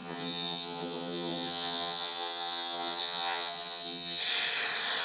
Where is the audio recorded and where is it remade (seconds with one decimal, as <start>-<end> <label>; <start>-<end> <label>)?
0.0-4.2 remade; 4.2-5.0 recorded